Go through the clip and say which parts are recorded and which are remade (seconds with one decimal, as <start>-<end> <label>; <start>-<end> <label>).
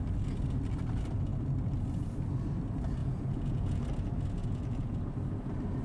0.0-3.0 recorded; 3.0-3.8 remade; 3.8-4.4 recorded; 4.4-5.0 remade; 5.0-5.8 recorded